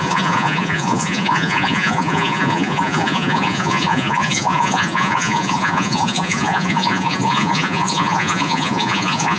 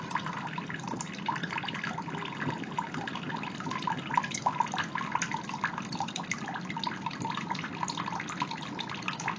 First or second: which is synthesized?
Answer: first